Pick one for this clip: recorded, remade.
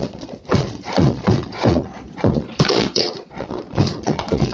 remade